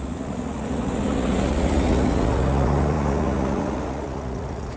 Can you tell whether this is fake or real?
fake